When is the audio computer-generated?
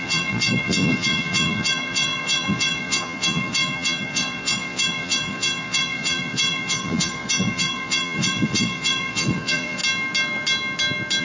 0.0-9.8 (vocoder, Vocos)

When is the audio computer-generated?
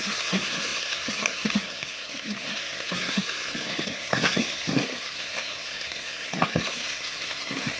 0.0-7.8 (codec, SNAC)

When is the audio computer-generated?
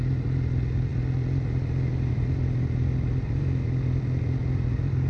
none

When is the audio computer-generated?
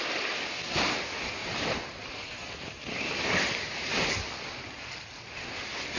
1.4-4.1 (vocoder, BigVGAN v2)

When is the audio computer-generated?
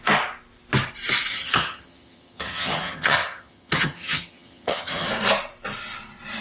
1.3-5.1 (vocoder, HiFi-GAN)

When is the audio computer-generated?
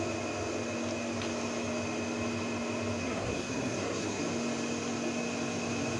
3.0-4.2 (codec, SNAC)